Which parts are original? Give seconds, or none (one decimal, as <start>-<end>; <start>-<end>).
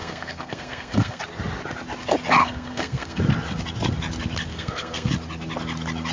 1.2-2.4; 3.2-4.5; 5.1-6.1